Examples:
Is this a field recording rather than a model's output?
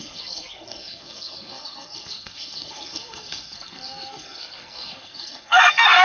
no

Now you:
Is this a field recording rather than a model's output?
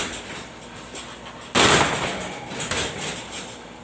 yes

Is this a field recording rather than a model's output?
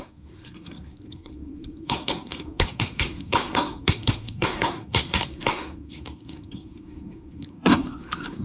no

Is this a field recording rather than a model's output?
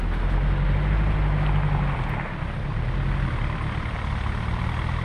yes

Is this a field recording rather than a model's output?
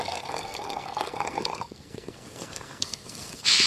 no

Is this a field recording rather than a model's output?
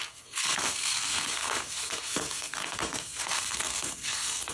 no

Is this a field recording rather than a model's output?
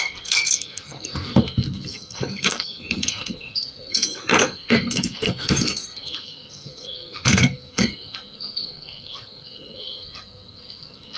no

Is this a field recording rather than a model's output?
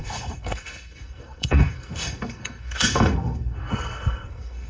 no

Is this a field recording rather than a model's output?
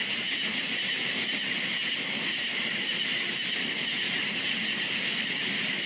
yes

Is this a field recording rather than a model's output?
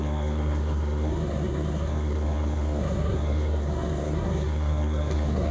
no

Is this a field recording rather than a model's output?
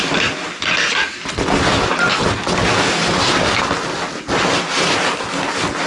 yes